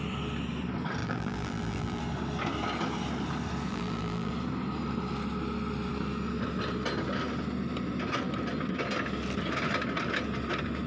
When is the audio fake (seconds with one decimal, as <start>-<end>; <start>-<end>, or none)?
1.0-2.0; 3.7-4.3